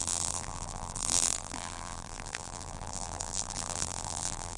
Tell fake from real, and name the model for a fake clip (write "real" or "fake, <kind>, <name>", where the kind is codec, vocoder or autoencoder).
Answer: fake, vocoder, BigVGAN v2